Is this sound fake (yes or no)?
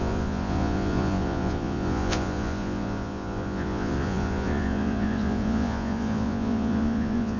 yes